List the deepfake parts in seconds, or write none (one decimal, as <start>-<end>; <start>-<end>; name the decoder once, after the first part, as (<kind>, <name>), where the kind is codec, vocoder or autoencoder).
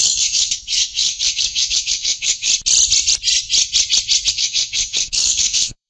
0.0-2.5 (codec, SNAC); 4.3-5.9